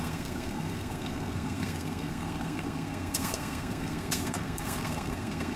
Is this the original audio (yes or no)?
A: no